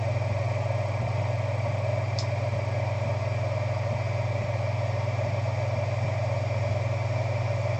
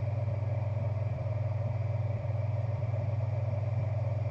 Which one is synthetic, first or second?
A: second